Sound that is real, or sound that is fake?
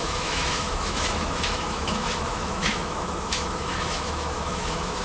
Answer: fake